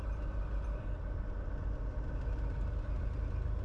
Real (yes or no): yes